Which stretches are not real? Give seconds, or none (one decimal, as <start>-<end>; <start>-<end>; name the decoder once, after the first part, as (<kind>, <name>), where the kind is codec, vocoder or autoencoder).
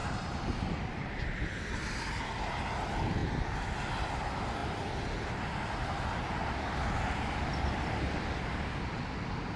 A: 0.0-1.2 (vocoder, BigVGAN v2); 3.2-3.9